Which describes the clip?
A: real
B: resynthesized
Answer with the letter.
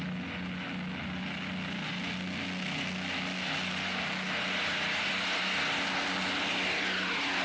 A